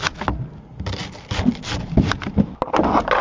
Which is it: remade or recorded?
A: recorded